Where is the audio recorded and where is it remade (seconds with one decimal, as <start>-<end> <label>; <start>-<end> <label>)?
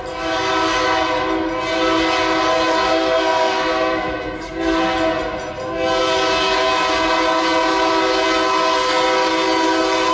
0.0-2.9 recorded; 2.9-4.9 remade; 4.9-10.1 recorded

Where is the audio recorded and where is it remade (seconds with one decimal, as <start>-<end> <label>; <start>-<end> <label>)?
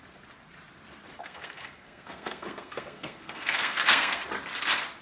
0.0-1.2 recorded; 1.2-4.2 remade; 4.2-5.0 recorded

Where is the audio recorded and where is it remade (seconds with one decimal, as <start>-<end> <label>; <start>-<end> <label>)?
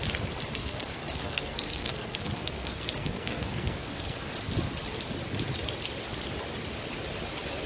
0.0-0.6 recorded; 0.6-4.2 remade; 4.2-7.7 recorded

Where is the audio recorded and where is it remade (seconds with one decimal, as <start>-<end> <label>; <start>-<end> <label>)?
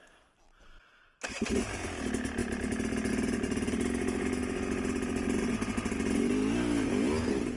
0.0-7.6 recorded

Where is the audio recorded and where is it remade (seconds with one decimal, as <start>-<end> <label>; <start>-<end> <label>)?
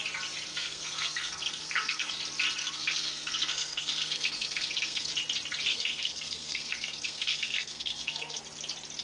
0.0-0.5 recorded; 0.5-2.1 remade; 2.1-2.6 recorded; 2.6-5.1 remade; 5.1-5.7 recorded; 5.7-8.4 remade; 8.4-9.0 recorded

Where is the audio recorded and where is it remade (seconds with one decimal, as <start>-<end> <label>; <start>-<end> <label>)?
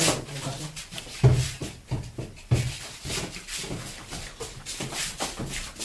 0.0-5.8 recorded